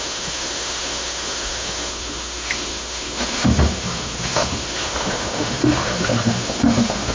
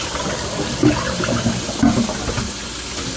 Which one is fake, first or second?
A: first